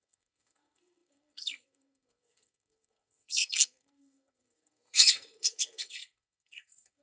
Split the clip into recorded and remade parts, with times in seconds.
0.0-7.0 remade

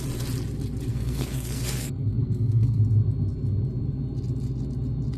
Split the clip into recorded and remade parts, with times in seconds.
0.0-0.9 recorded; 0.9-2.8 remade; 2.8-5.2 recorded

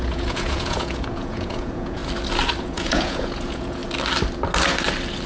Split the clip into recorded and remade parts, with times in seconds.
0.0-2.0 remade; 2.0-2.6 recorded; 2.6-3.8 remade; 3.8-5.3 recorded